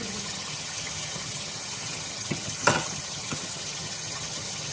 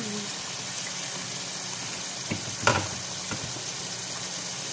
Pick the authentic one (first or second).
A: second